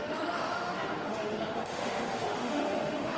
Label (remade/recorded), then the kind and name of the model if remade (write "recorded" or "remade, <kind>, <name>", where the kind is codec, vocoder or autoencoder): remade, autoencoder, DAC-VAE